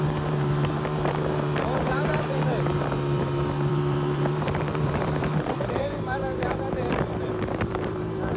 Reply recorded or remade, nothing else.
remade